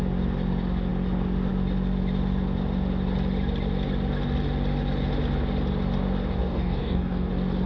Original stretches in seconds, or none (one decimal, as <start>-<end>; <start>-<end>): 0.0-6.4; 7.3-7.7

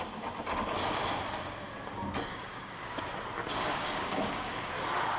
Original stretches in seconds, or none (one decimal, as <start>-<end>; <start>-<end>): 0.0-2.3; 2.9-3.5; 4.7-5.2

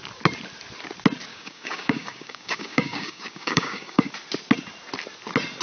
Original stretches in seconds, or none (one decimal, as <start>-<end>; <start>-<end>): 0.0-1.3; 4.1-5.6

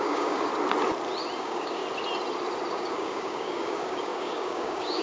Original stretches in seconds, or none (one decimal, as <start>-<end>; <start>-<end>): 0.5-1.4; 1.8-2.7